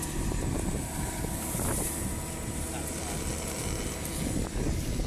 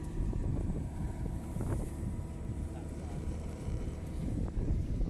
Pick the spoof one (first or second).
second